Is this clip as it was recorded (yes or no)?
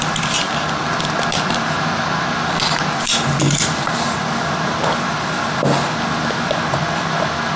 yes